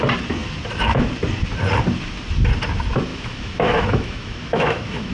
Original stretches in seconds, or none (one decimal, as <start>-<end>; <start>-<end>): 0.0-3.1